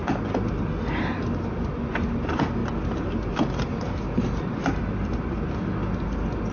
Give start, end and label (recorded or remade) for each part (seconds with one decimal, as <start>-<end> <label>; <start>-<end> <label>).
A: 0.0-6.5 recorded